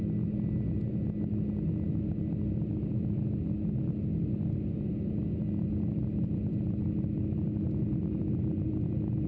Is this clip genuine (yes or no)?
yes